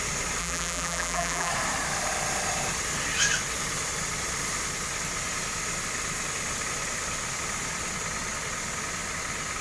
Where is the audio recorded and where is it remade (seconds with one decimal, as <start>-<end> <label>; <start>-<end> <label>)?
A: 0.0-0.4 recorded; 0.4-1.5 remade; 1.5-9.6 recorded